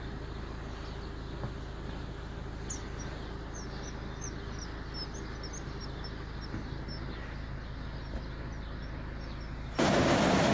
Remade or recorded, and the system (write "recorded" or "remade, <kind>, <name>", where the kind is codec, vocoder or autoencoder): recorded